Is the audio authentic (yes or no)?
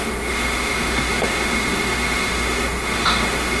no